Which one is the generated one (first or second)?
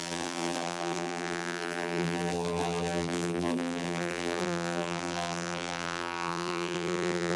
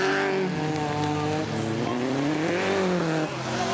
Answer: first